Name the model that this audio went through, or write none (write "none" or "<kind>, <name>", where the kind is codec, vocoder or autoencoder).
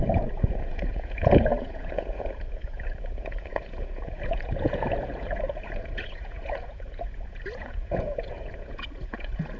vocoder, Vocos